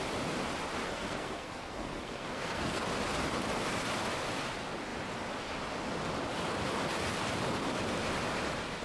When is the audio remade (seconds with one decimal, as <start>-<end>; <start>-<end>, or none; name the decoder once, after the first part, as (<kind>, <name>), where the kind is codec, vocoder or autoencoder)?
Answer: 0.8-2.8 (codec, SNAC)

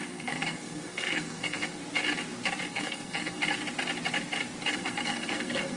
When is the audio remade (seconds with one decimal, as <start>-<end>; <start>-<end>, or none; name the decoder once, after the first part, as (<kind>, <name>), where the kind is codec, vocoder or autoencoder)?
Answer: 0.0-1.8 (codec, SNAC); 2.7-3.4; 4.7-5.8

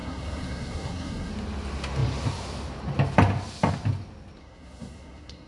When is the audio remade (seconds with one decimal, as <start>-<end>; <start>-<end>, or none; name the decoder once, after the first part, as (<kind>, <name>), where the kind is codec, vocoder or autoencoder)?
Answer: 0.0-1.3 (codec, SNAC); 4.4-5.5

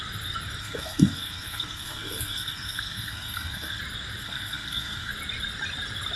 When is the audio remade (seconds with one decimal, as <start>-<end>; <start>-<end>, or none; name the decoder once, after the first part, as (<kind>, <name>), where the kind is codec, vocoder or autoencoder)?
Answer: 0.6-3.8 (codec, SNAC); 4.2-5.1

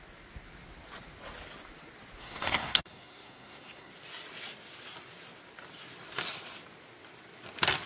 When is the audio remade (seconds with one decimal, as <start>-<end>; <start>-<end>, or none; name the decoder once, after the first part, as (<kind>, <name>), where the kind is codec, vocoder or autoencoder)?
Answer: 2.2-3.9 (codec, SNAC)